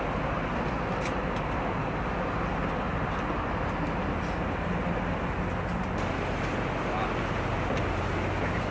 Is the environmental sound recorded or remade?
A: recorded